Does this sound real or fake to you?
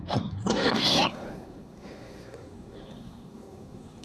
fake